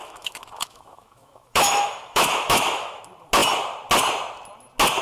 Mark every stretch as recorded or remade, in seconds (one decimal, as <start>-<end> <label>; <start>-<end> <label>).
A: 0.0-3.0 remade; 3.0-5.0 recorded